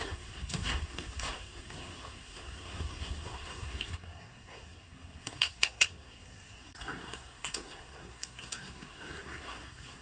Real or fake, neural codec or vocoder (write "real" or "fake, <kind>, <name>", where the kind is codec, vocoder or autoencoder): fake, codec, SNAC